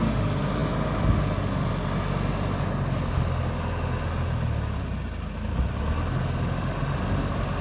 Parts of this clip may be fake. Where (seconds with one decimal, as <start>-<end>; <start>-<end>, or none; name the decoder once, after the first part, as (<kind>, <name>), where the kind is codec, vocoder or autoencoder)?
none